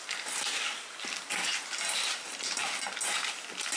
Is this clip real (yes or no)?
yes